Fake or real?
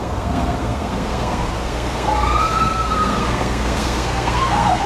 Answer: fake